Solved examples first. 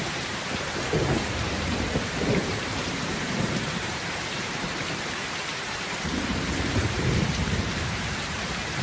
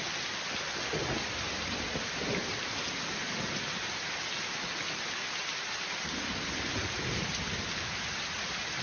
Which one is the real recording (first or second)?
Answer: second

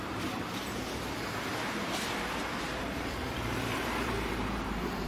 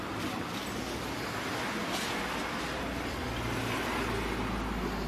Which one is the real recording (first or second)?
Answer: second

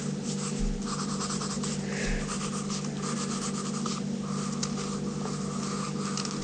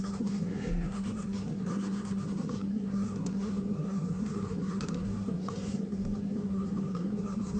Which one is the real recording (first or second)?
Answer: first